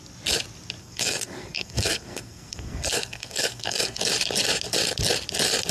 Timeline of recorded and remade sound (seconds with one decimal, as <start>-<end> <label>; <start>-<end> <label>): 0.0-0.8 recorded; 0.8-4.0 remade; 4.0-5.7 recorded